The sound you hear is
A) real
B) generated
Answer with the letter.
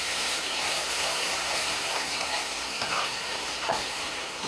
B